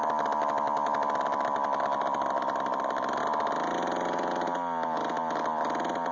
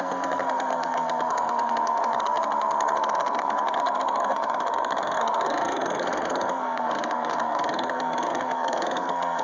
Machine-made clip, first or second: second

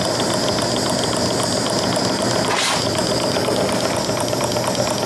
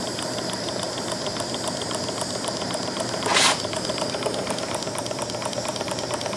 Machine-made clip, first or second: second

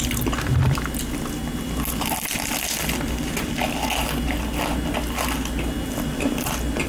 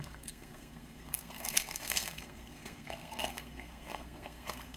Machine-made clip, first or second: second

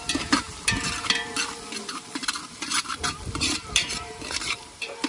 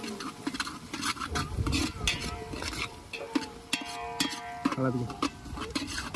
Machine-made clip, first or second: first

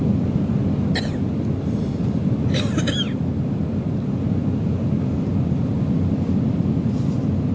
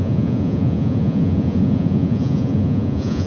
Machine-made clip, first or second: second